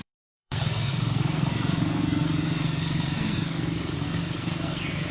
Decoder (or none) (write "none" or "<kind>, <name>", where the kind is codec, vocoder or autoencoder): codec, SNAC